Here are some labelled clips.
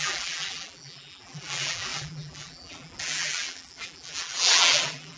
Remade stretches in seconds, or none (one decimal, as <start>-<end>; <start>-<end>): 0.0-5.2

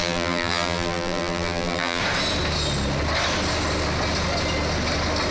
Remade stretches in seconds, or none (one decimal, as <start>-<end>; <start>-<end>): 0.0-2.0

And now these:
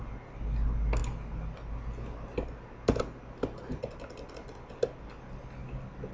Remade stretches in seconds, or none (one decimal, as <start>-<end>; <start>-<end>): none

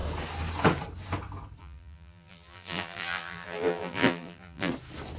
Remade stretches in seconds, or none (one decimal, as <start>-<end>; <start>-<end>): 1.6-4.7

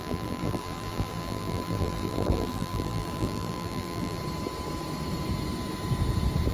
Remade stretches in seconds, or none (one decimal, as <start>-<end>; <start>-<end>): 0.0-4.2

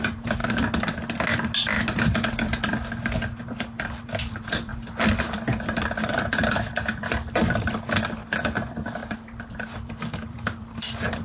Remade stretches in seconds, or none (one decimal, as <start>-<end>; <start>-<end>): 0.0-0.4; 3.4-4.7; 6.0-11.2

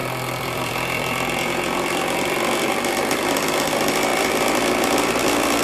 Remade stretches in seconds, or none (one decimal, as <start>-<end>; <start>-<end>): 0.0-5.6

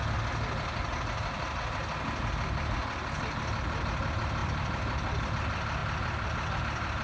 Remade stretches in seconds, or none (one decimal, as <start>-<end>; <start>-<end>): 4.4-5.3; 5.8-6.6